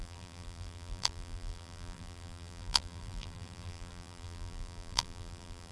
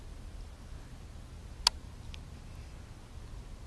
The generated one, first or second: first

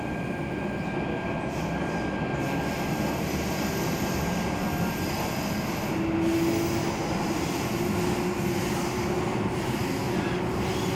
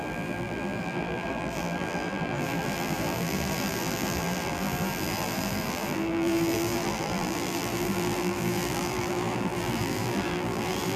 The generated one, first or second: second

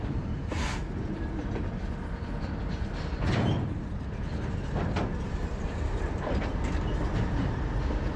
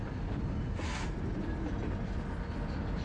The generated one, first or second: first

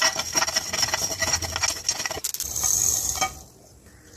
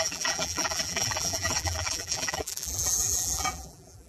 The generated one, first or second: second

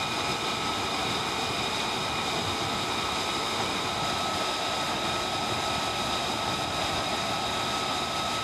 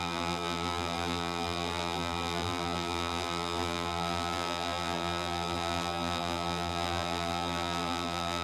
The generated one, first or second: second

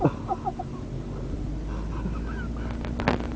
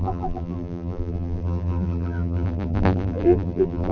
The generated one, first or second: second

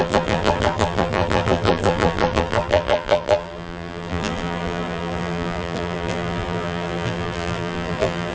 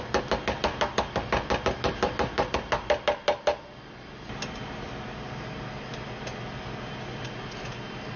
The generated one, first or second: first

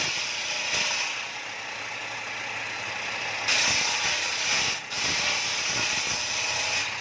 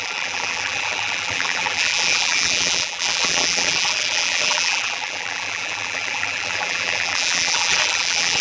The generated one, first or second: second